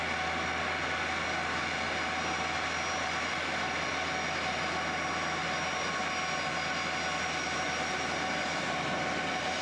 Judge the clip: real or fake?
real